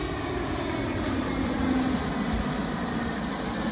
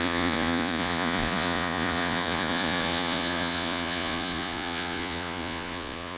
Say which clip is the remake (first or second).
second